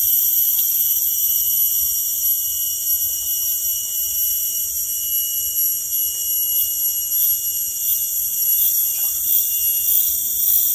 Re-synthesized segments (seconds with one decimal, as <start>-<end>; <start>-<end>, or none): 8.1-9.4